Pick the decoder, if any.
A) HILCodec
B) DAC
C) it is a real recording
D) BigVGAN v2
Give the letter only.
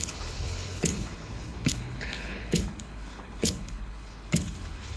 A